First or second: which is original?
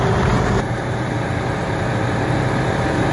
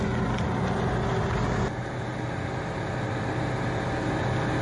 second